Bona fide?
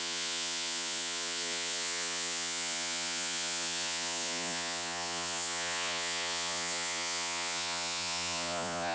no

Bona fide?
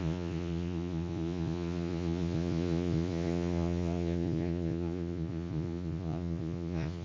no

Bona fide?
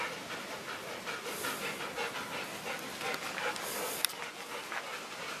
yes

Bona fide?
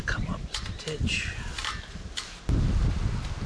yes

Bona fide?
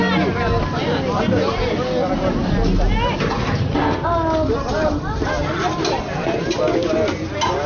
yes